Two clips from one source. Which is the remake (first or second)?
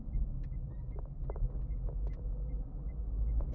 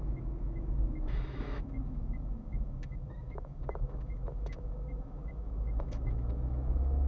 second